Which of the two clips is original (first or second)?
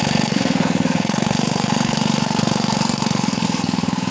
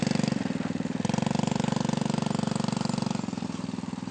second